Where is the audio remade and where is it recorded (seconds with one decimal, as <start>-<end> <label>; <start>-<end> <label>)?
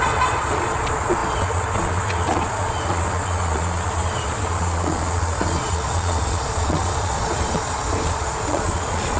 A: 0.0-9.2 remade